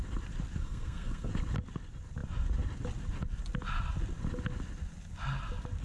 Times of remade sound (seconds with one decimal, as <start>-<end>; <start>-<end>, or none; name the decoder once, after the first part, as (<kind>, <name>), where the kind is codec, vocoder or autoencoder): 0.6-1.3 (codec, SNAC)

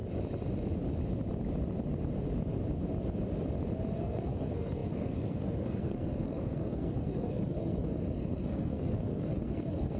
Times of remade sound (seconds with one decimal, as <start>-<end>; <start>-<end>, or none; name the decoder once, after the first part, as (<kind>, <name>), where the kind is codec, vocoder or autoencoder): 4.0-10.0 (codec, SNAC)